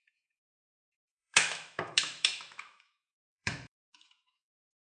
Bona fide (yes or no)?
no